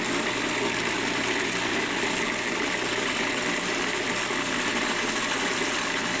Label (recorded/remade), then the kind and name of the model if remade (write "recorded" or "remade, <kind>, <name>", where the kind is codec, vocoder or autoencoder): recorded